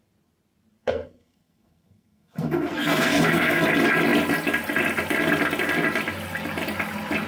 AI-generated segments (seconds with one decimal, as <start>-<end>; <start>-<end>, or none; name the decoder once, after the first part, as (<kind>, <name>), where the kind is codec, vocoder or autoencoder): 0.8-3.6 (codec, SNAC)